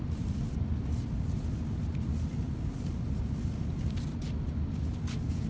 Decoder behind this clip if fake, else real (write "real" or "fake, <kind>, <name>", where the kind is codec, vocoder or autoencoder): real